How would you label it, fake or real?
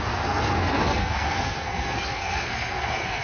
fake